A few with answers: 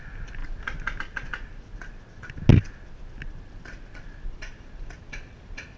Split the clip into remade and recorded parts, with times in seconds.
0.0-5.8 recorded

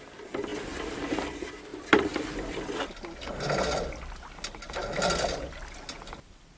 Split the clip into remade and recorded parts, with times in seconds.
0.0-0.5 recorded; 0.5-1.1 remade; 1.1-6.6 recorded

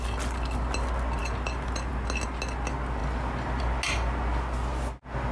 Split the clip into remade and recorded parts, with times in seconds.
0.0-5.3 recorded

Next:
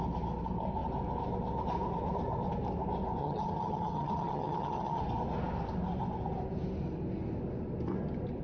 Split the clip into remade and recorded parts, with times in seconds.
0.0-3.2 recorded; 3.2-5.0 remade; 5.0-8.4 recorded

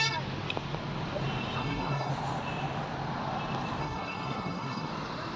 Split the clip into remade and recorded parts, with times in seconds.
0.0-1.6 recorded; 1.6-2.1 remade; 2.1-3.8 recorded; 3.8-4.9 remade; 4.9-5.4 recorded

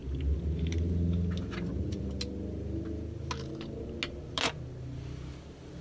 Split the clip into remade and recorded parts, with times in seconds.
0.0-5.8 recorded

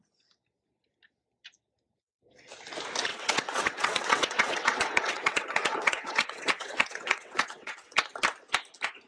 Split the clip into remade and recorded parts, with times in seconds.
0.0-3.1 recorded; 3.1-8.1 remade; 8.1-9.1 recorded